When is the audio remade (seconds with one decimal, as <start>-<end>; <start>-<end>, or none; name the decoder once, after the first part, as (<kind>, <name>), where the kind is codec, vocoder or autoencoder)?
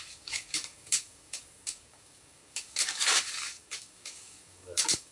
0.0-5.1 (codec, DAC)